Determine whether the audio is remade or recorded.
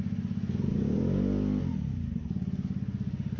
recorded